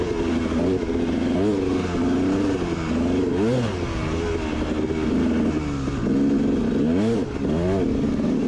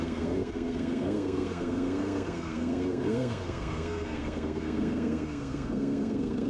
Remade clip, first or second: second